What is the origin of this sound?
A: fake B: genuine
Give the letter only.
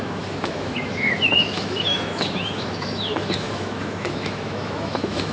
A